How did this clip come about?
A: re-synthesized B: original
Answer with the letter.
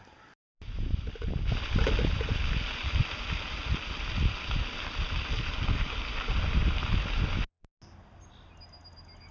B